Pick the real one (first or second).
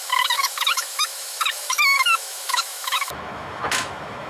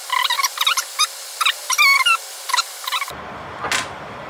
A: second